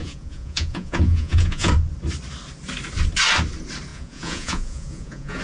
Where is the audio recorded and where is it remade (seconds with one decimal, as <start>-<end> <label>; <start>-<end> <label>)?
0.0-1.7 remade; 1.7-3.9 recorded; 3.9-5.4 remade